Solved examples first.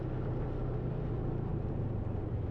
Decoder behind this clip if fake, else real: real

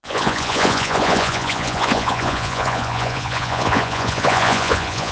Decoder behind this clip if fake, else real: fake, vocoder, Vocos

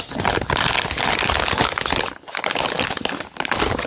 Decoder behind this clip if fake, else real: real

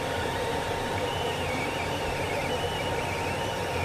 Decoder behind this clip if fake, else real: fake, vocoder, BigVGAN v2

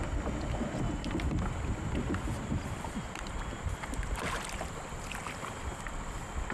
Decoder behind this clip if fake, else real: real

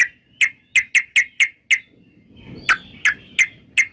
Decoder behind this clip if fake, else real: real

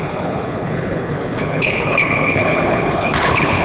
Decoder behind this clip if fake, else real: fake, codec, HILCodec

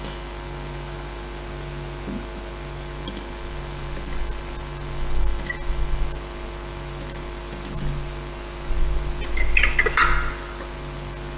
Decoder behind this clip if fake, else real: real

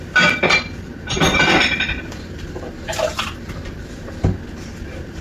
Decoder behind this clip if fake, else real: fake, vocoder, BigVGAN v2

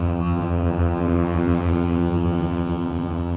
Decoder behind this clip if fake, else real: fake, vocoder, HiFi-GAN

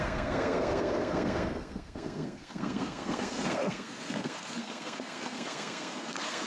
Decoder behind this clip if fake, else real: fake, codec, SNAC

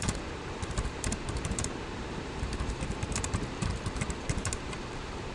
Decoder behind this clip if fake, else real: fake, vocoder, BigVGAN v2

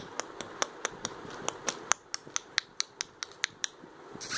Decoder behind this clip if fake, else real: real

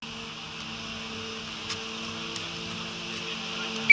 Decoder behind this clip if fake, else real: real